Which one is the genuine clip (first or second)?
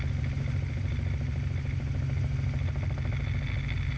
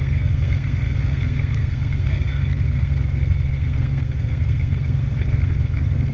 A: first